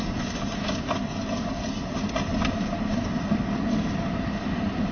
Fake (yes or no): no